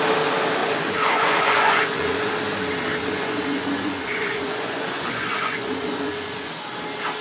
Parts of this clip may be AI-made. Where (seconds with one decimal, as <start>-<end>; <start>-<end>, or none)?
0.6-2.3; 3.0-6.5